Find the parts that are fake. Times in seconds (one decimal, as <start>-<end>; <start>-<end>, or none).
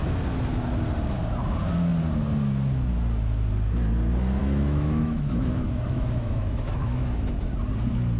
4.4-7.3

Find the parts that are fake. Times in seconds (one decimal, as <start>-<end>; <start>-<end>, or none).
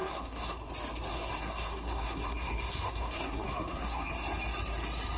0.0-0.7; 1.1-4.1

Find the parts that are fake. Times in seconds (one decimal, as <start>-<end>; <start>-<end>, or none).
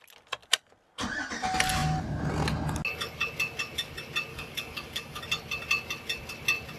4.3-5.2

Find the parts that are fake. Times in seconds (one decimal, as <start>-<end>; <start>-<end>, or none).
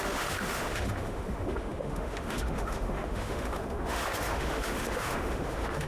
0.0-5.9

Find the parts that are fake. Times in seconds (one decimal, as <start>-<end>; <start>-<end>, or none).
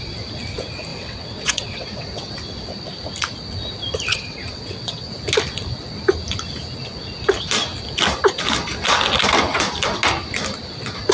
0.9-2.3; 4.1-5.1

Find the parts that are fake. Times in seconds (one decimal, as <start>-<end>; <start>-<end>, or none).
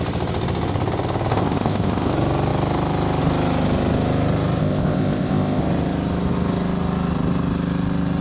1.3-2.1; 4.6-5.6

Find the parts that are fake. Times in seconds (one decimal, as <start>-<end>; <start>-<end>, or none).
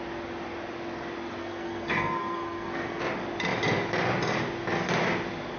1.4-3.0